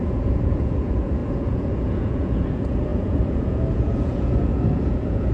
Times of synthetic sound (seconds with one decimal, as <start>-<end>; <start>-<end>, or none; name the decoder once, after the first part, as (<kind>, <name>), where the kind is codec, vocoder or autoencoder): 0.0-5.3 (vocoder, Vocos)